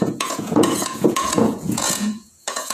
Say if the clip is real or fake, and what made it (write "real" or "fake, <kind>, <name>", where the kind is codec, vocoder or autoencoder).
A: fake, vocoder, Vocos